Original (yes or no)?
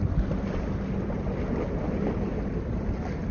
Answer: yes